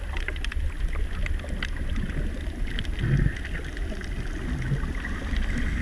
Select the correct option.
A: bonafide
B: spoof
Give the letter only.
A